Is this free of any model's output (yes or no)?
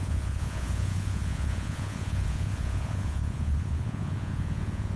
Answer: no